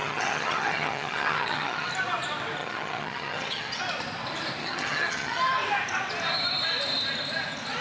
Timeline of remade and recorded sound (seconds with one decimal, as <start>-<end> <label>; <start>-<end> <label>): 0.0-1.9 remade; 1.9-2.6 recorded; 2.6-3.8 remade; 3.8-4.6 recorded; 4.6-5.4 remade; 5.4-7.8 recorded

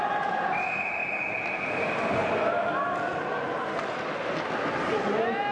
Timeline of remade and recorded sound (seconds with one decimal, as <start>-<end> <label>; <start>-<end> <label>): 0.0-5.5 recorded

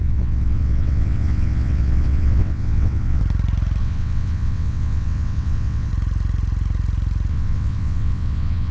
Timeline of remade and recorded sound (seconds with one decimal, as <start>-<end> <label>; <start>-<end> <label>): 0.0-3.2 remade; 3.2-3.8 recorded; 3.8-5.9 remade; 5.9-7.3 recorded; 7.3-8.7 remade

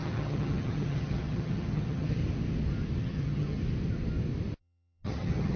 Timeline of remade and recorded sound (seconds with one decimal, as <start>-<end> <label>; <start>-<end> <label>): 0.0-2.2 remade; 2.2-3.0 recorded; 3.0-3.6 remade; 3.6-4.6 recorded; 4.6-5.6 remade

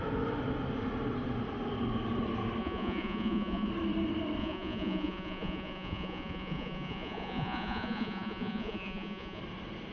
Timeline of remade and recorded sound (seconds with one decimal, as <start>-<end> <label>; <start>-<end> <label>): 0.0-2.6 recorded; 2.6-3.7 remade; 3.7-4.4 recorded; 4.4-9.4 remade; 9.4-9.9 recorded

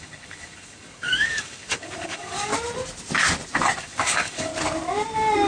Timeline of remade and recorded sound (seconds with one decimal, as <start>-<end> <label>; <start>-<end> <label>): 0.0-2.5 remade; 2.5-3.8 recorded; 3.8-4.5 remade; 4.5-5.5 recorded

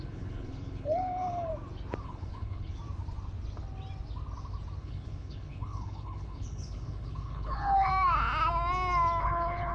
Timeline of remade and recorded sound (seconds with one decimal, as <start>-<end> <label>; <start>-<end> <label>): 0.0-1.5 remade; 1.5-2.0 recorded; 2.0-2.8 remade; 2.8-4.8 recorded; 4.8-7.9 remade; 7.9-9.2 recorded; 9.2-9.7 remade

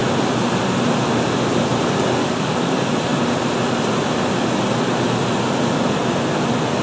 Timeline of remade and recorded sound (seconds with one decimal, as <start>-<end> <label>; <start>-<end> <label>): 0.0-2.2 recorded; 2.2-2.7 remade; 2.7-6.8 recorded